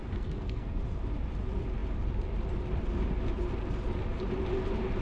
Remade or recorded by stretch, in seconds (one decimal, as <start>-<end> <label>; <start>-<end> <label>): 0.0-0.8 remade; 0.8-5.0 recorded

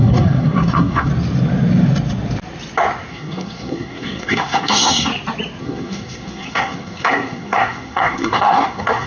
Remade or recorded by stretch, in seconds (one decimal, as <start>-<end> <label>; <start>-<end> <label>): 0.0-1.1 remade; 1.1-3.1 recorded; 3.1-5.1 remade; 5.1-5.6 recorded; 5.6-9.1 remade